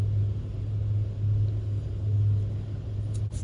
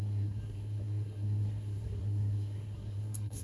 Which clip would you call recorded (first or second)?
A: first